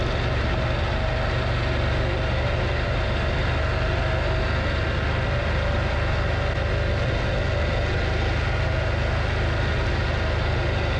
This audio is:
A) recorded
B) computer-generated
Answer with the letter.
A